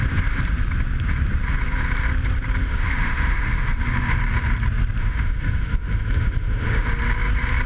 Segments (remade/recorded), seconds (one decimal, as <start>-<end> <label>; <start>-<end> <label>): 0.0-2.6 recorded; 2.6-4.2 remade; 4.2-5.0 recorded; 5.0-6.9 remade; 6.9-7.7 recorded